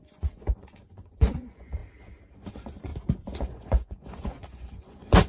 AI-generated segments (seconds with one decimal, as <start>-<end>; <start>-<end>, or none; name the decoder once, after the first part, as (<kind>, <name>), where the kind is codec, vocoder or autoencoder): 0.0-1.8 (vocoder, Vocos); 2.5-2.9; 3.4-5.3